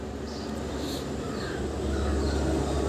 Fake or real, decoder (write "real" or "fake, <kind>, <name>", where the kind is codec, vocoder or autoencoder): real